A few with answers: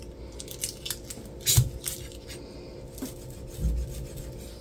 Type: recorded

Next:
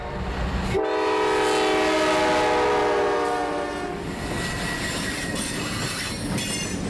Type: recorded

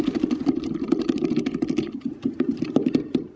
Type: recorded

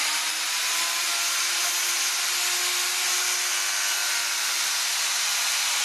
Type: recorded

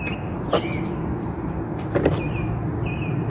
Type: recorded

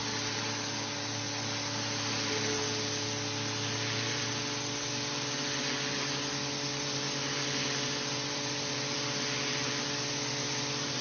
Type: recorded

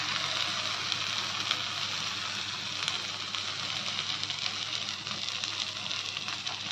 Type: recorded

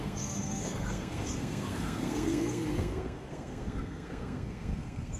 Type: remade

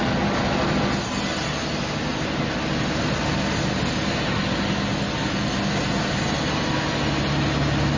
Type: recorded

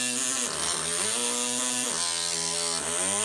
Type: recorded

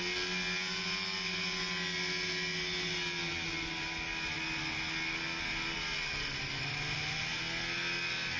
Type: recorded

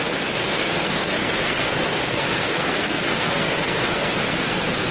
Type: remade